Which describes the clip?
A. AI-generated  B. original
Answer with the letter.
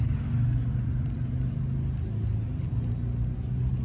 B